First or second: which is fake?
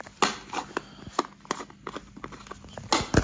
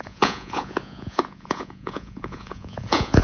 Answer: second